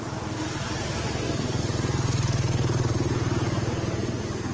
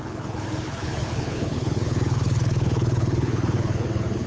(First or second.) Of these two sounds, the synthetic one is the second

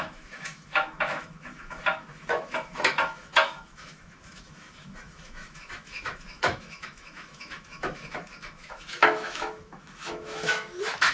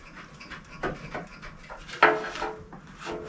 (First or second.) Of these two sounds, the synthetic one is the first